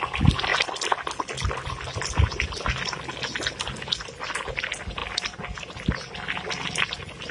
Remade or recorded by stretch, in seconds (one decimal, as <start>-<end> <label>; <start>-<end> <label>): 0.0-7.3 recorded